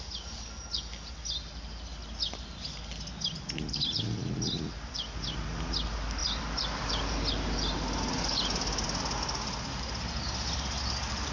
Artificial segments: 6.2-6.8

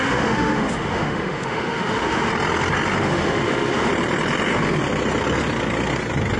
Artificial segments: 0.0-2.3; 3.0-3.9

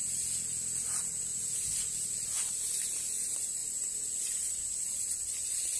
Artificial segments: none

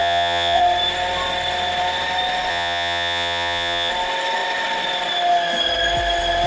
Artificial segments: 0.0-0.6; 2.5-3.9

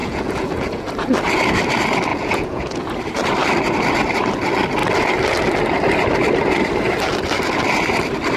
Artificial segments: 0.0-0.9; 2.1-2.9

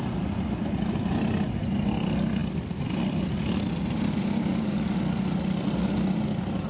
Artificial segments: none

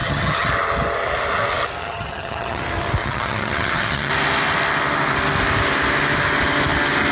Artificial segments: 0.0-0.5; 1.8-2.6; 3.0-4.1